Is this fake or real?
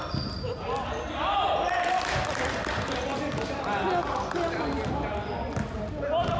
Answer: real